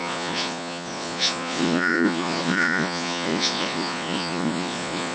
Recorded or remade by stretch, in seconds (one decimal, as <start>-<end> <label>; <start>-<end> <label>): 0.0-5.1 remade